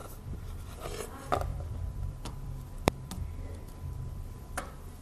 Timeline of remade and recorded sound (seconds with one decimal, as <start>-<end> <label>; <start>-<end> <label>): 0.0-0.8 remade; 0.8-1.5 recorded; 1.5-4.5 remade; 4.5-5.0 recorded